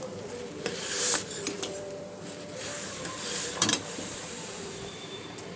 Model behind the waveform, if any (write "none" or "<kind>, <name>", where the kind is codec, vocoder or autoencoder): vocoder, BigVGAN v2